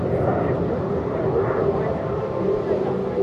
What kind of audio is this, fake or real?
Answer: real